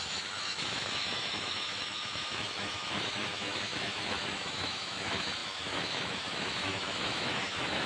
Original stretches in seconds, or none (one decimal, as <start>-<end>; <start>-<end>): none